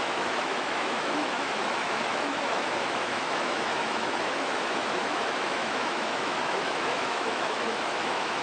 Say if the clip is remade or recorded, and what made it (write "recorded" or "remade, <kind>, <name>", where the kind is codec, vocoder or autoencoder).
remade, autoencoder, DAC-VAE